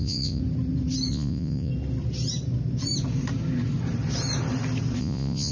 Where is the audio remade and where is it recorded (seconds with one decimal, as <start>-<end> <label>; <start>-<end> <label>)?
0.0-0.4 remade; 0.4-1.1 recorded; 1.1-1.7 remade; 1.7-5.0 recorded; 5.0-5.5 remade